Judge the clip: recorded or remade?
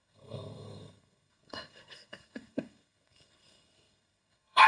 remade